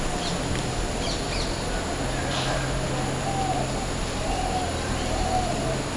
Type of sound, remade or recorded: recorded